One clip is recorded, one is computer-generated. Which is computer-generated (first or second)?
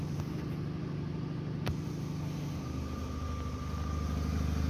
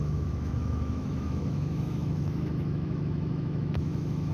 second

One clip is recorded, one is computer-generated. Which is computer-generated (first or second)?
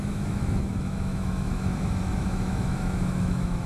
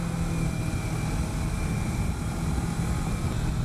first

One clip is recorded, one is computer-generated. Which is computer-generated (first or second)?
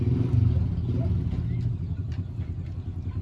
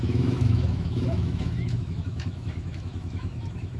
second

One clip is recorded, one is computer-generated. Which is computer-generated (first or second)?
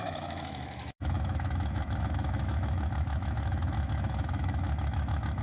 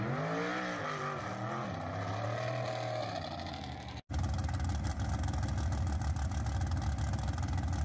first